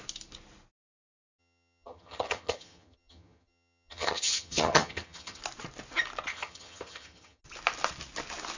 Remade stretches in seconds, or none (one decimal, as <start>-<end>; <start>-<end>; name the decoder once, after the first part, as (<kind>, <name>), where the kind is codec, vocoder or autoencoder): 1.4-5.4 (vocoder, HiFi-GAN); 6.3-7.4